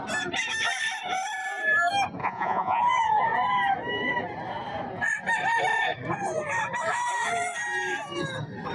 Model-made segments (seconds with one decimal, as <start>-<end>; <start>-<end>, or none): 2.2-2.8